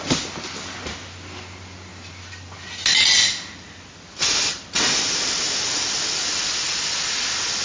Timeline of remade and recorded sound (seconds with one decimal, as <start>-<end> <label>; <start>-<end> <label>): 0.0-7.6 recorded